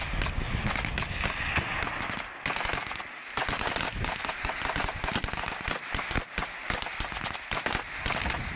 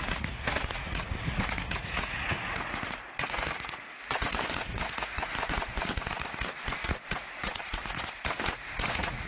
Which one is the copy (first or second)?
second